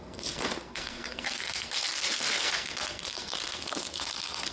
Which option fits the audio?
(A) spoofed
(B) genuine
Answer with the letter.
A